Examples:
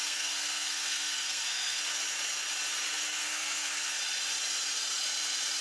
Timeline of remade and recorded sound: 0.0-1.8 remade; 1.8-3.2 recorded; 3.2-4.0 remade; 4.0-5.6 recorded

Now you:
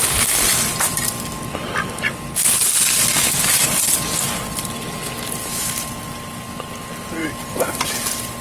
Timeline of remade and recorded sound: 0.0-7.2 recorded; 7.2-7.8 remade; 7.8-8.4 recorded

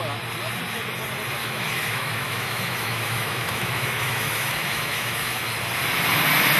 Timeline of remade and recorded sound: 0.0-1.4 recorded; 1.4-5.4 remade; 5.4-6.6 recorded